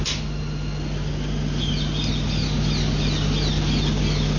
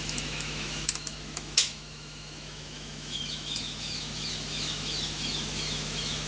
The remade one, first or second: second